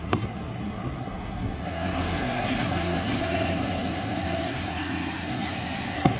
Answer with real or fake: fake